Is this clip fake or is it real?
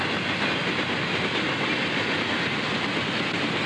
real